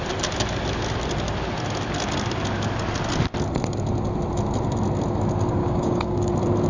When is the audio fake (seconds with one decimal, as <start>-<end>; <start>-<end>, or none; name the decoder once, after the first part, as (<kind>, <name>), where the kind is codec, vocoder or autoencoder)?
5.6-6.3 (codec, DAC)